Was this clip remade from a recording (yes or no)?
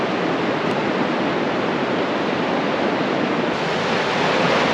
no